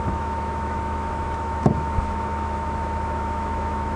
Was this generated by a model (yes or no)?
yes